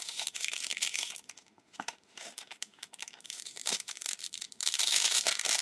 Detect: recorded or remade remade